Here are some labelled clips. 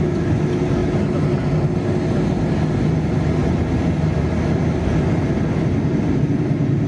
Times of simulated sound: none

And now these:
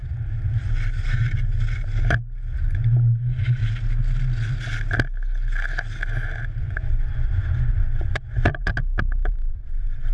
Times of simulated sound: 3.2-3.6; 6.6-8.7; 9.3-10.1

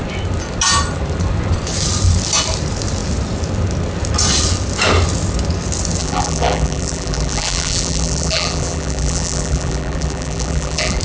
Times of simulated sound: 6.0-11.0

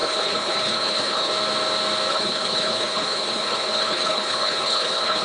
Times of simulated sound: 0.0-1.3; 2.1-5.2

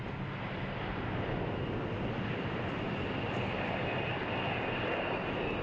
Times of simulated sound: 0.9-4.3